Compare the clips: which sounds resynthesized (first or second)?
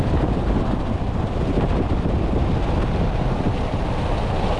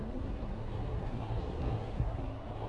second